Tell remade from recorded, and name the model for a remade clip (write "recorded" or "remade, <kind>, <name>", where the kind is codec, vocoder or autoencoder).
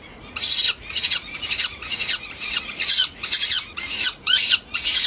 remade, vocoder, Vocos